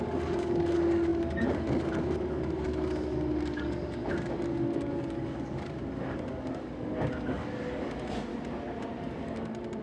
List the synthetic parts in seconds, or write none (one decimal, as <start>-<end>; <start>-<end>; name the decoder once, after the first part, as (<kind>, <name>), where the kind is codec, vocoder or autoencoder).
0.0-8.3 (codec, DAC); 9.0-9.8